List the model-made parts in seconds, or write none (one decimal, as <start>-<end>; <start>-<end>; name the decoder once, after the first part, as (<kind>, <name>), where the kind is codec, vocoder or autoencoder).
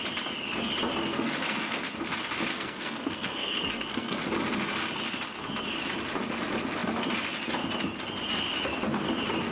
1.1-1.9 (codec, SNAC); 2.5-4.2